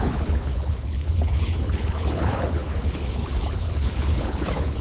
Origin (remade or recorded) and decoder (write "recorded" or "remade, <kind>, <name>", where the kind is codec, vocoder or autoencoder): remade, codec, HILCodec